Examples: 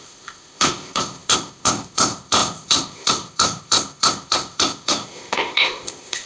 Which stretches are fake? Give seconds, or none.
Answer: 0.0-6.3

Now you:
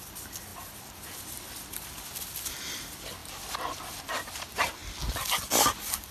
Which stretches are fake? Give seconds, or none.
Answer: none

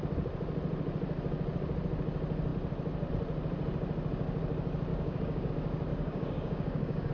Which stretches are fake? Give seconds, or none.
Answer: 4.9-5.5; 5.9-7.1

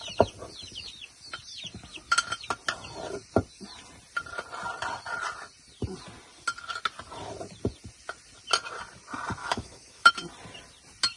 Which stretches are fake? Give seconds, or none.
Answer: 9.4-10.1